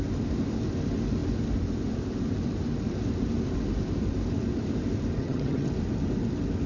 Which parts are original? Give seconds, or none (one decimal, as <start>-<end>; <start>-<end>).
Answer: 0.0-5.2; 5.7-6.7